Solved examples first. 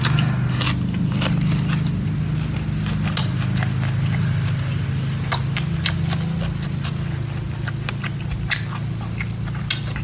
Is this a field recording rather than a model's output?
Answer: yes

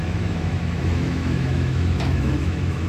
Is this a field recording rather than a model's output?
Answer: no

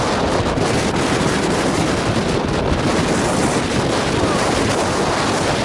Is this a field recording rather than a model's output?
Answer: yes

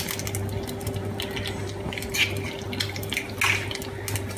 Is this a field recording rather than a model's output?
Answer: yes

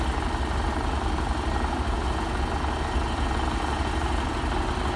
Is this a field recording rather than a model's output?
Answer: yes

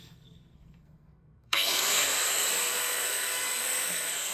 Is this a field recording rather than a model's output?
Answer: no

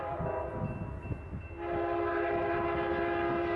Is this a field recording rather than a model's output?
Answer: yes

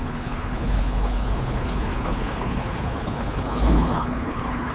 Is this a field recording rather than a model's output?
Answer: no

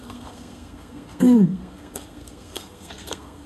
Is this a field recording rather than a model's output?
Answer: no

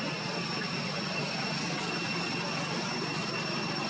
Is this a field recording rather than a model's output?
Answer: yes